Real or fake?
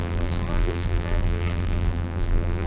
fake